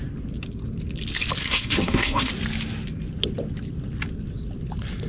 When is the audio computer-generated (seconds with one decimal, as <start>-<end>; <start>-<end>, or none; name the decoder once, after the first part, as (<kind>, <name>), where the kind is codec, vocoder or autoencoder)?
1.4-2.3 (codec, SNAC)